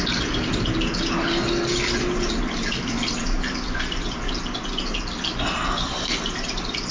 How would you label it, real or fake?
real